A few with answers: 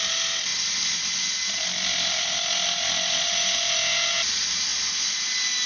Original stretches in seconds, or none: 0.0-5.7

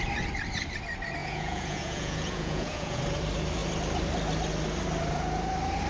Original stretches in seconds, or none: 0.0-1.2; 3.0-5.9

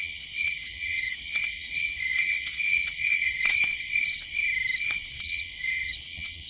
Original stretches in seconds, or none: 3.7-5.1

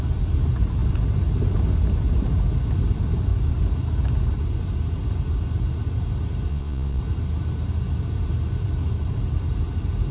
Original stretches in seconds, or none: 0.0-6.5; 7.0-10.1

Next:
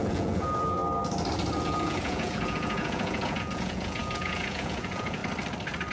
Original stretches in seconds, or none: 0.8-1.6; 5.2-5.9

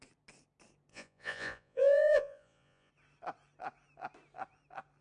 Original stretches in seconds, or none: 0.0-0.9; 2.9-5.0

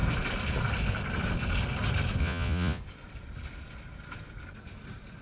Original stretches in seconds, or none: 0.0-2.2; 2.8-5.2